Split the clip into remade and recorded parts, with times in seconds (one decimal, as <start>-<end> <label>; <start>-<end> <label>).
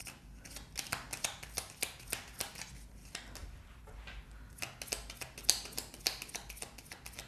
0.0-7.3 recorded